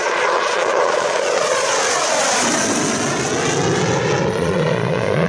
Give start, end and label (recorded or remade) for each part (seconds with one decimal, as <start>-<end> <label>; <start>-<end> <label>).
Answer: 0.0-1.7 remade; 1.7-4.3 recorded; 4.3-5.3 remade